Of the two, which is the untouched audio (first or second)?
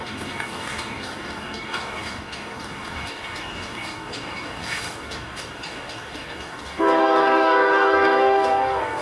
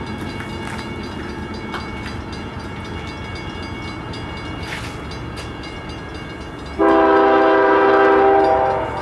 second